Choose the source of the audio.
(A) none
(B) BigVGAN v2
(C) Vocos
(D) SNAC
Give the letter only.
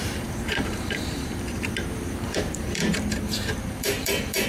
B